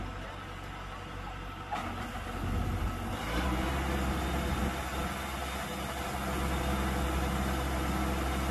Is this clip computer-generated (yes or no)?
no